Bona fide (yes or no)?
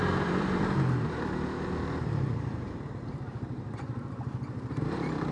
no